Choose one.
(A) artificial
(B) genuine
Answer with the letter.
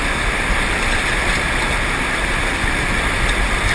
B